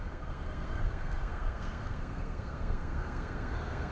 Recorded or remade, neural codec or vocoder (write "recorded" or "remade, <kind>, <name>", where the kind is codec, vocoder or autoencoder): remade, codec, SNAC